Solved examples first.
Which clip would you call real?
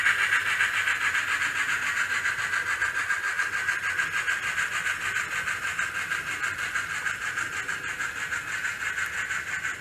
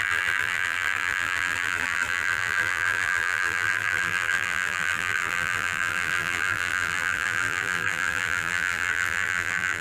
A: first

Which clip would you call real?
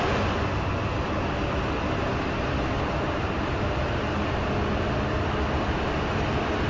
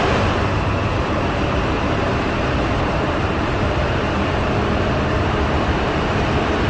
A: first